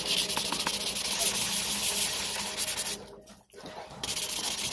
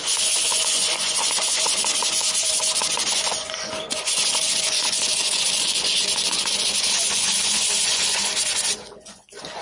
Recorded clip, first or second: first